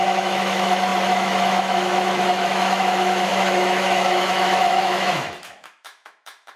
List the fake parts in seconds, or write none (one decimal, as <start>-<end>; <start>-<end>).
0.0-6.6